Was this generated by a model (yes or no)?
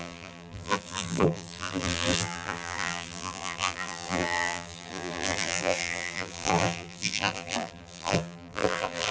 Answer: yes